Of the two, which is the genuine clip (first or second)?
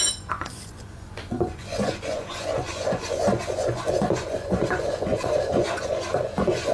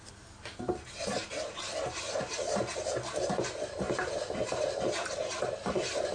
second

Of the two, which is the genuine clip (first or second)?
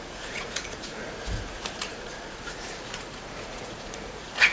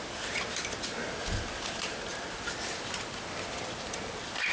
second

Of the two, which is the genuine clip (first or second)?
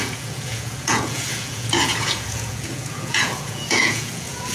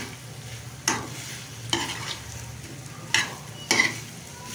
second